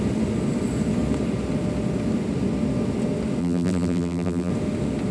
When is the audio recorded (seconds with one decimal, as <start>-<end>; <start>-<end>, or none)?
0.0-3.4; 4.5-5.1